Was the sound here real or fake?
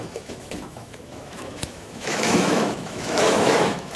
fake